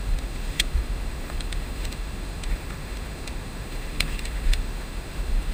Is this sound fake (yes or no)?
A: yes